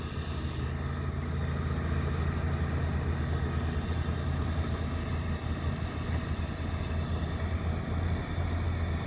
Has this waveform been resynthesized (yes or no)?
no